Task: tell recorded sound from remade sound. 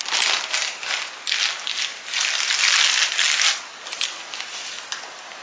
recorded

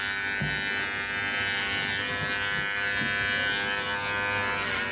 recorded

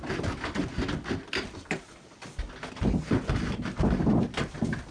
recorded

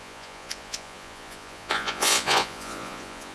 remade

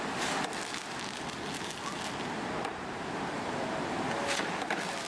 recorded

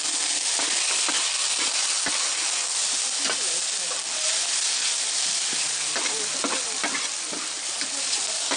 recorded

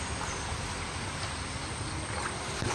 recorded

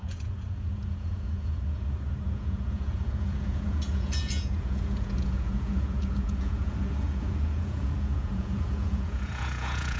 remade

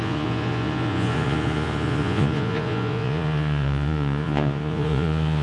remade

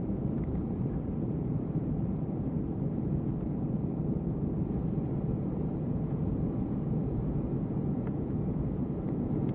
remade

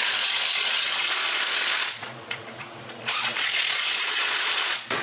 remade